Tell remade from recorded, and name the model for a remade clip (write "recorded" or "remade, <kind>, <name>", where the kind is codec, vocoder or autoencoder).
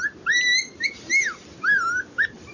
recorded